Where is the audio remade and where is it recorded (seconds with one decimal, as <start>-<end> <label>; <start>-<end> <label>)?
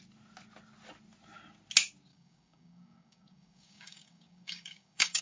0.0-2.1 recorded; 2.1-5.2 remade